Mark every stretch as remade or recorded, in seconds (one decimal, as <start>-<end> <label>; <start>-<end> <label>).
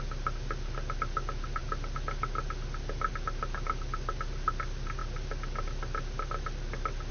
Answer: 0.0-7.1 recorded